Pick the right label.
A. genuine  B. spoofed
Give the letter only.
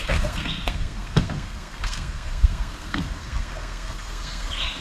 B